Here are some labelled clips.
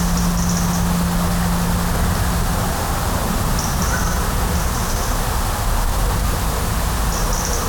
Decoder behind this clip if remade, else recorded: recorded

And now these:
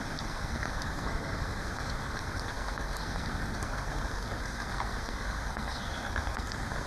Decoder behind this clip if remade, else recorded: remade, codec, SNAC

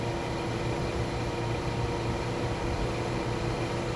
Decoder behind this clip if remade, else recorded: recorded